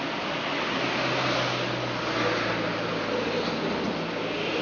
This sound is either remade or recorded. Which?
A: recorded